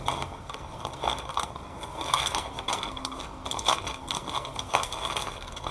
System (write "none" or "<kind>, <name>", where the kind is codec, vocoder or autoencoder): codec, SNAC